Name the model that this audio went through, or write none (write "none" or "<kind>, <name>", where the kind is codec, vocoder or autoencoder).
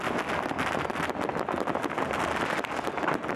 none